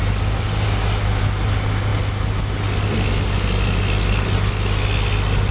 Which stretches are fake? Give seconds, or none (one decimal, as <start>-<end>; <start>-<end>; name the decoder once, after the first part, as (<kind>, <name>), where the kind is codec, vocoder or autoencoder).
none